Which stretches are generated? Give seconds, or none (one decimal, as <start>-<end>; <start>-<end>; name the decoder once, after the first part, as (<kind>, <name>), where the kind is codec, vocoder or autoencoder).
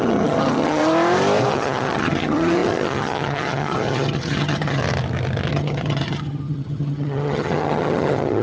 0.0-0.8 (vocoder, HiFi-GAN); 1.5-4.8; 5.5-8.4